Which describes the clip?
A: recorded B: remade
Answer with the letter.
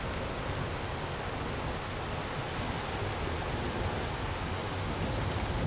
A